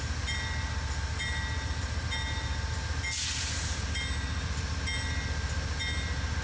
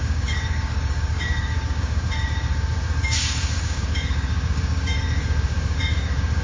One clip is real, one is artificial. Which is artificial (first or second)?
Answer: second